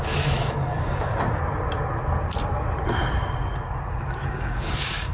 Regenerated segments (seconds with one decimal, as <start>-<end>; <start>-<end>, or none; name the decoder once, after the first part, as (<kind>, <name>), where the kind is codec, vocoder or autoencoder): 0.0-1.1 (codec, DAC); 4.2-5.1